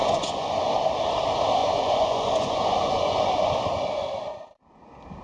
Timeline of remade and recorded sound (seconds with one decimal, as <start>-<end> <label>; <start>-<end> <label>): 0.0-0.5 remade; 0.5-1.6 recorded; 1.6-3.5 remade; 3.5-5.2 recorded